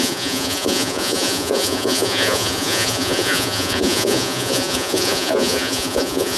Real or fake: fake